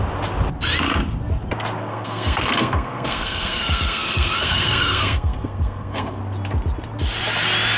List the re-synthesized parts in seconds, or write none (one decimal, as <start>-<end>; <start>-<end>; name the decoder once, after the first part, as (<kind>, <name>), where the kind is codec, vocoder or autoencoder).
1.8-6.2 (codec, SNAC)